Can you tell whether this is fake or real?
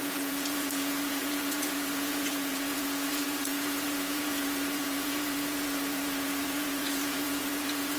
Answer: fake